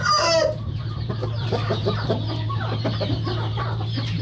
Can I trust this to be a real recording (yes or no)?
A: no